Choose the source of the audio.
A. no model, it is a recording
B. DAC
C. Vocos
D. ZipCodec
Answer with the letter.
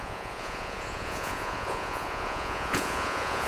C